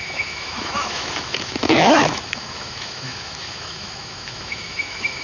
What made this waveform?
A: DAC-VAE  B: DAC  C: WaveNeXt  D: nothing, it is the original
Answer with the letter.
A